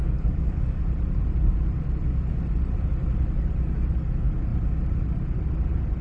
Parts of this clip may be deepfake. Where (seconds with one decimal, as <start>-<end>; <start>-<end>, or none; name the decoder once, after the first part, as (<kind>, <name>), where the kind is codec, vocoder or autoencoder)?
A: 0.0-0.8 (codec, DAC)